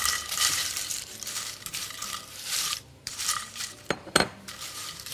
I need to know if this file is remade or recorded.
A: remade